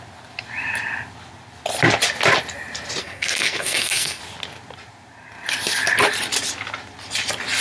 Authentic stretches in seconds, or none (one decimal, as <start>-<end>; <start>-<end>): 0.0-3.0; 4.2-7.6